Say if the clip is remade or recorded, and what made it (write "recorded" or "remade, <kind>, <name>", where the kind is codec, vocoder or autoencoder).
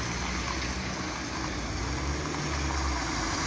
recorded